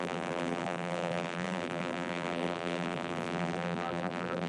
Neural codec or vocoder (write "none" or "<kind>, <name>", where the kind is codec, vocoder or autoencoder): vocoder, BigVGAN v2